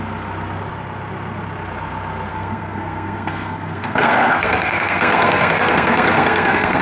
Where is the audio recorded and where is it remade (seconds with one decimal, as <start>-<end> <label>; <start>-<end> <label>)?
0.0-2.3 recorded; 2.3-6.8 remade